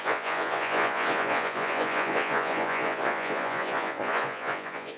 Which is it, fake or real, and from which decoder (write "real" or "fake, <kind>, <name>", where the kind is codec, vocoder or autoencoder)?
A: fake, vocoder, Vocos